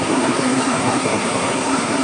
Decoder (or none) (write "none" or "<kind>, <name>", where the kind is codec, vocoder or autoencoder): codec, SNAC